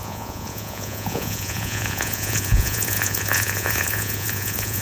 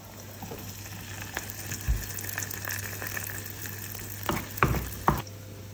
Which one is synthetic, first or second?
first